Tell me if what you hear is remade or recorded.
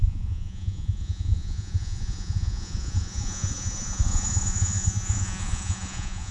remade